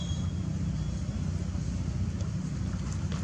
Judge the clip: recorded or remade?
recorded